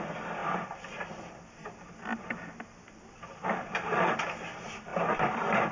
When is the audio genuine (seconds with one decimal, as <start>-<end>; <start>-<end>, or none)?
none